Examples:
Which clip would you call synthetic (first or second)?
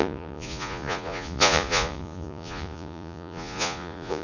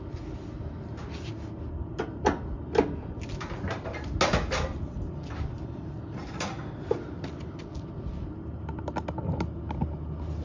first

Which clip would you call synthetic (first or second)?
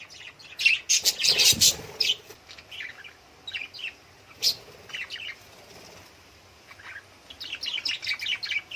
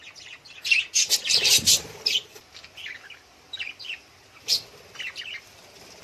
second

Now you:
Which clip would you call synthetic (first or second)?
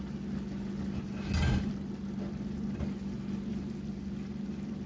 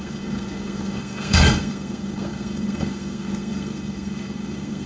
second